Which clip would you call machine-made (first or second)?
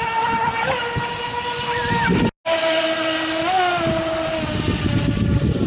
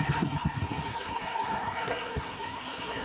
second